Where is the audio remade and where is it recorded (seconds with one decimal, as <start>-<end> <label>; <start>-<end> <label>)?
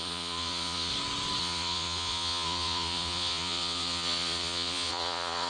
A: 0.0-0.9 remade; 0.9-1.4 recorded; 1.4-5.5 remade